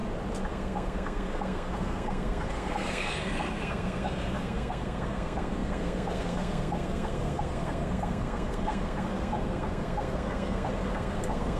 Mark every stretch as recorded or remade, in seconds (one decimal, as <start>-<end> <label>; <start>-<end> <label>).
0.0-0.5 recorded; 0.5-11.6 remade